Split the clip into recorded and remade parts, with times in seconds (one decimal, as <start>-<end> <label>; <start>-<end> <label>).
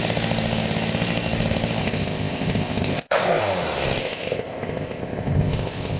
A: 0.0-1.8 recorded; 1.8-3.4 remade; 3.4-4.0 recorded; 4.0-6.0 remade